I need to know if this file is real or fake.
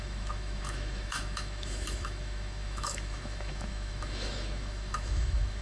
fake